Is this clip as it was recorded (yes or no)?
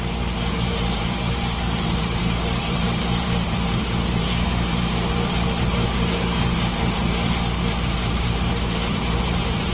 no